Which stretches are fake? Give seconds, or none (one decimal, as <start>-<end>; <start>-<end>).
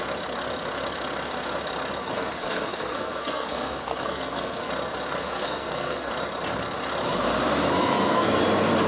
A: 2.0-4.7; 5.2-6.1; 7.8-8.4